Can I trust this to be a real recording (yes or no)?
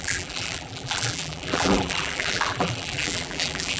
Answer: no